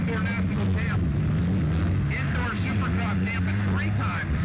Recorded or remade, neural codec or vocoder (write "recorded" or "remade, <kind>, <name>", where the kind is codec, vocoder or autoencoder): recorded